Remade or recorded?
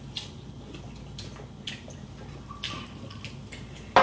recorded